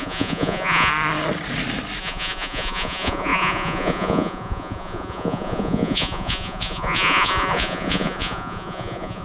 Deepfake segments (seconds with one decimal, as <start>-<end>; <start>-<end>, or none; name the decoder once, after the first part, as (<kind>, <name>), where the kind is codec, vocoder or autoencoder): 0.0-0.9 (vocoder, Vocos); 2.0-9.2